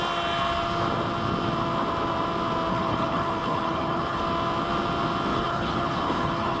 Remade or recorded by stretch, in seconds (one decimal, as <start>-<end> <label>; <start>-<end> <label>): 0.0-2.7 recorded; 2.7-4.2 remade; 4.2-5.3 recorded; 5.3-6.6 remade